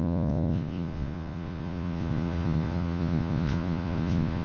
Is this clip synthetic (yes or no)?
yes